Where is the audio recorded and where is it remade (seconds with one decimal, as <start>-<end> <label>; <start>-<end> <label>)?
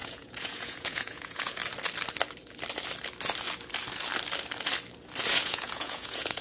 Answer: 0.0-1.6 remade; 1.6-5.4 recorded; 5.4-6.4 remade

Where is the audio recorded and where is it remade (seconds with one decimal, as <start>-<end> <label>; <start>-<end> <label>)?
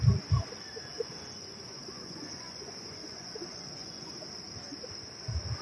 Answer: 0.0-0.9 recorded; 0.9-4.1 remade; 4.1-5.6 recorded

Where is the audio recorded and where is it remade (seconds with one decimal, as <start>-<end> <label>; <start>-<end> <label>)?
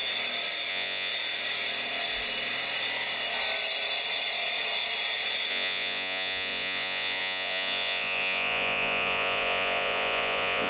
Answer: 0.0-0.7 recorded; 0.7-1.1 remade; 1.1-5.5 recorded; 5.5-10.7 remade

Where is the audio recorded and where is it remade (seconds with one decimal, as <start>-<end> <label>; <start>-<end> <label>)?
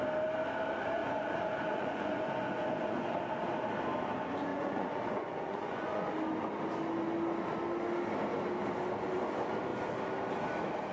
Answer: 0.0-1.0 recorded; 1.0-3.2 remade; 3.2-4.5 recorded; 4.5-6.1 remade; 6.1-10.9 recorded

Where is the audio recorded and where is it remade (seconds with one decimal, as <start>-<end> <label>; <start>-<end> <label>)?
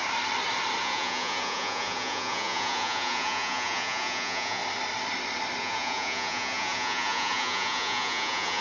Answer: 0.0-0.8 recorded; 0.8-4.6 remade; 4.6-5.6 recorded; 5.6-8.6 remade